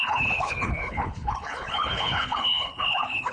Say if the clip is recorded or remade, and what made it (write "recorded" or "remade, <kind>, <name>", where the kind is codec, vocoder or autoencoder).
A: remade, codec, HILCodec